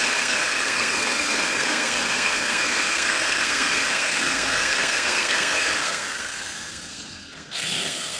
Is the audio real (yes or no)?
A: no